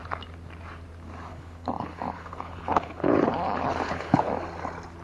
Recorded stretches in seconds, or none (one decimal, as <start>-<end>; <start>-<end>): 0.0-1.3; 4.3-5.0